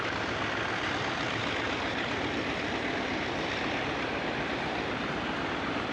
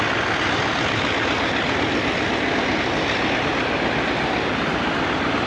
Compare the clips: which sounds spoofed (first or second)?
first